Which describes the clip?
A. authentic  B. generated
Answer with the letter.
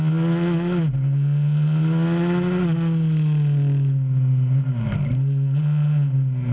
A